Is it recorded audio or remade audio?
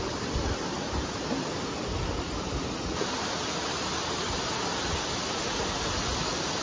recorded